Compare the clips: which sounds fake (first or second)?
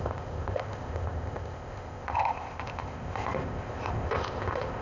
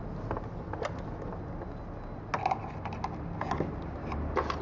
first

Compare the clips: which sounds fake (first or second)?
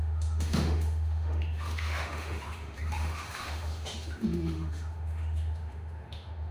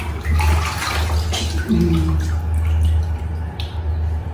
first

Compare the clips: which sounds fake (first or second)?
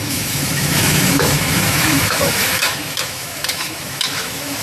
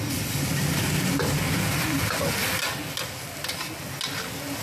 first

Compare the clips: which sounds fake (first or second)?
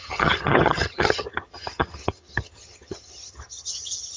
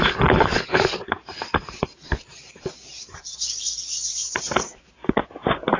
first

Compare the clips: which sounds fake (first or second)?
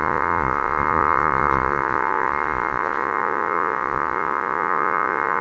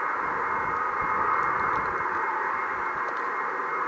first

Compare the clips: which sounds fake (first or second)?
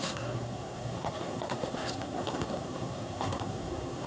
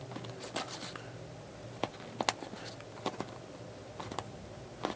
first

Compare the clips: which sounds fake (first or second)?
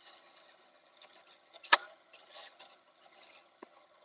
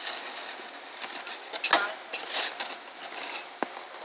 first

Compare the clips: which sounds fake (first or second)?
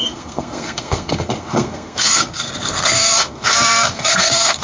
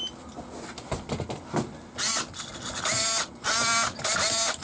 first